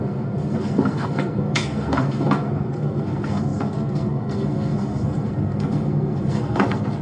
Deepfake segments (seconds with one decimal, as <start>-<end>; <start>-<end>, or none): 0.0-7.0